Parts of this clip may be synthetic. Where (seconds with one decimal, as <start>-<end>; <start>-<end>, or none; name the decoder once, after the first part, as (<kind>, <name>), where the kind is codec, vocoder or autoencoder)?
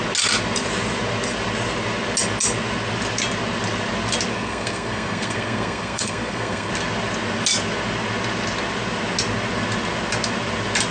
4.3-6.7 (codec, SNAC)